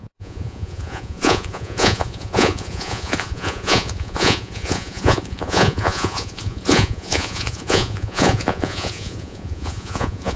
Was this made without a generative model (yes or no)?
no